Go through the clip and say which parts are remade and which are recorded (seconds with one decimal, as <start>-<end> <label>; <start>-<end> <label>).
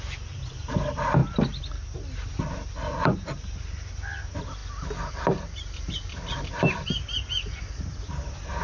0.0-8.6 recorded